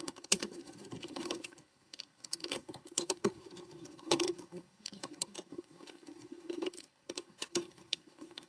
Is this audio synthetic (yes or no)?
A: yes